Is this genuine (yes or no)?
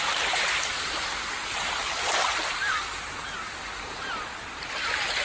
yes